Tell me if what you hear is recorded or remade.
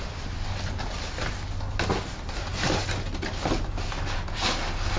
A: recorded